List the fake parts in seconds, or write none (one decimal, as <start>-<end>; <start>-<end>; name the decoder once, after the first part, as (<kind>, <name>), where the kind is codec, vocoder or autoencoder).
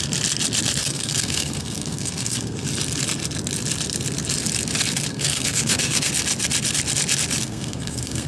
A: 0.8-2.7 (codec, SNAC); 5.1-6.1; 7.4-8.3